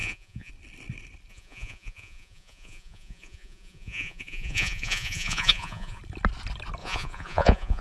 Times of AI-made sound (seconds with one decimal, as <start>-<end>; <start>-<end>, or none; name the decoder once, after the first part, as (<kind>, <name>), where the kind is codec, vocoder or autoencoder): 0.0-0.5 (vocoder, Vocos); 1.3-6.0; 6.8-7.8